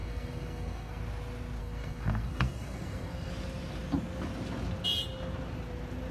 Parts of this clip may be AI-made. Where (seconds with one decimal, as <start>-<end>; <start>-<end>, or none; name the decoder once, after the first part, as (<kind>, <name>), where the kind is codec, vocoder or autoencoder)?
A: 0.0-1.0 (codec, SNAC); 1.6-3.3